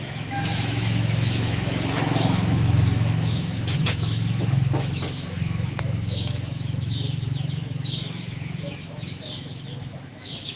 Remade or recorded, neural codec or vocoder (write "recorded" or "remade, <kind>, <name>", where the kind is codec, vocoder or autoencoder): remade, autoencoder, DAC-VAE